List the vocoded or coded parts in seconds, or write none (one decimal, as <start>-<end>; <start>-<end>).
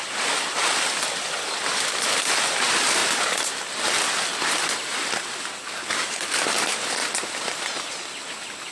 0.0-3.0; 5.9-7.0